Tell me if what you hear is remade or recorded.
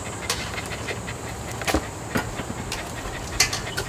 recorded